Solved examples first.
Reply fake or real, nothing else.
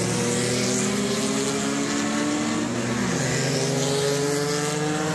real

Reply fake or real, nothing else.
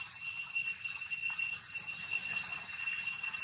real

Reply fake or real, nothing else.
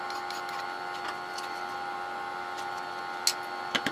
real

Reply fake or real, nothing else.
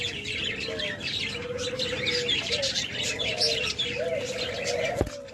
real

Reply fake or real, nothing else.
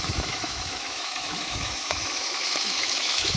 fake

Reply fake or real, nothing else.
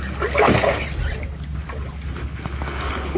real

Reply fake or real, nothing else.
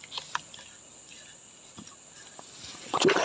real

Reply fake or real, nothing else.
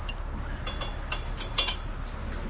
real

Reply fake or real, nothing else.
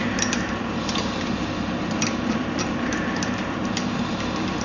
fake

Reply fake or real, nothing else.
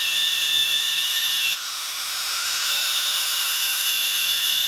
fake